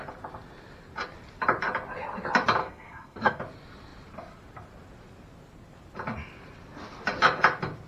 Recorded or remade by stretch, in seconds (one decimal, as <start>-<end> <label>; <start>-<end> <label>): 0.0-2.6 recorded; 2.6-3.4 remade; 3.4-7.9 recorded